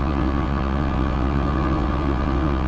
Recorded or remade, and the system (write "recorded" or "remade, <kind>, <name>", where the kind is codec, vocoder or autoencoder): remade, vocoder, WaveNeXt